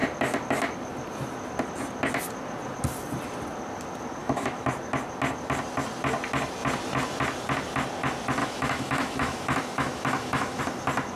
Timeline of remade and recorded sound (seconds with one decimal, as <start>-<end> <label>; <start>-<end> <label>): 0.0-4.2 recorded; 4.2-4.7 remade; 4.7-8.4 recorded; 8.4-10.6 remade; 10.6-11.2 recorded